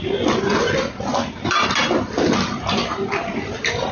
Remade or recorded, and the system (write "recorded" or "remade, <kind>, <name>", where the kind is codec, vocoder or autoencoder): recorded